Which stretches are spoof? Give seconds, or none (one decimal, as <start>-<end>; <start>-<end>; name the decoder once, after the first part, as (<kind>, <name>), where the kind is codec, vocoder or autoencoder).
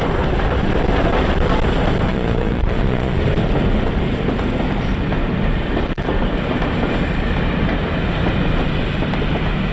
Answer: 2.1-3.2 (vocoder, Vocos)